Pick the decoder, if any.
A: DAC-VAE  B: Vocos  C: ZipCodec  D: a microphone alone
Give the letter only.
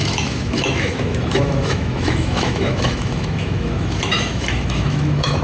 A